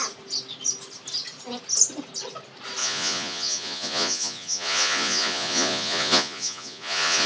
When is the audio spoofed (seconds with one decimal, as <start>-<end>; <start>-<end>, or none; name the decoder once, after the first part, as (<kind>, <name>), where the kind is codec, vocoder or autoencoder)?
2.8-7.3 (vocoder, Vocos)